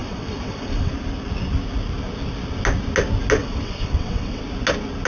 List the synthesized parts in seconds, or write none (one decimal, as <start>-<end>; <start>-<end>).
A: 0.0-0.9; 3.4-4.4